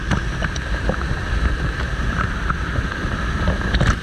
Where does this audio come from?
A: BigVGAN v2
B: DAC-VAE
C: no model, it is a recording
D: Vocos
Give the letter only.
C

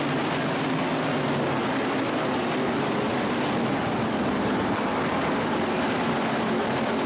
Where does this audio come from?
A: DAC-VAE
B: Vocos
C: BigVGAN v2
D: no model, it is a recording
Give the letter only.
D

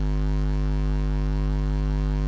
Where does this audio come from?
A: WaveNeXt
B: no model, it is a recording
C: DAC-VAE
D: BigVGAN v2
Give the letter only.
C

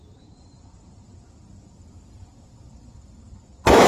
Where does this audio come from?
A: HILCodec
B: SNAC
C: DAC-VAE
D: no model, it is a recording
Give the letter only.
D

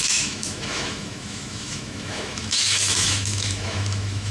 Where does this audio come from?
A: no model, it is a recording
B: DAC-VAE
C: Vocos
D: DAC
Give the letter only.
B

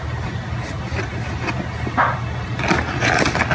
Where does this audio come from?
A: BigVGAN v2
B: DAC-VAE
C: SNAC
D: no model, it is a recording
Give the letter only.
D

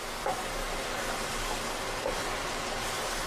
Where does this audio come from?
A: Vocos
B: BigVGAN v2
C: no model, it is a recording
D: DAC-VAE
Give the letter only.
C